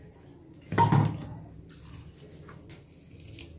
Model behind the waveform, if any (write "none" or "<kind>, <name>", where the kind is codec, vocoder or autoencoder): none